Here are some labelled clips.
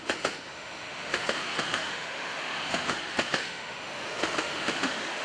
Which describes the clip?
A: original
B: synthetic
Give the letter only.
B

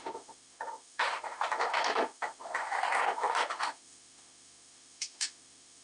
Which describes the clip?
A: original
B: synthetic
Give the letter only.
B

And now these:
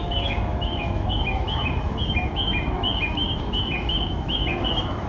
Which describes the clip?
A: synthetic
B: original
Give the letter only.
A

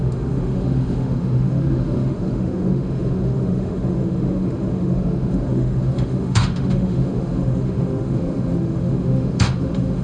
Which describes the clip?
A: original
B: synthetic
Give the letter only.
B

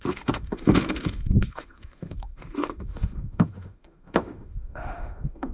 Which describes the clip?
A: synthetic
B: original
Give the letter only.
A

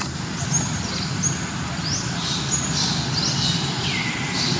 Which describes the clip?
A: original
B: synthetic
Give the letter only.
A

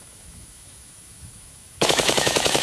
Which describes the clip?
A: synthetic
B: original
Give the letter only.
A